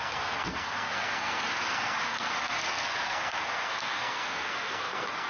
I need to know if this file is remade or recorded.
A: remade